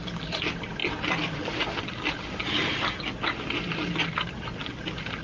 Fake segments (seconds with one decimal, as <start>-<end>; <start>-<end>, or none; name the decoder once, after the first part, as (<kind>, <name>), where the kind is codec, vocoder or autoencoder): none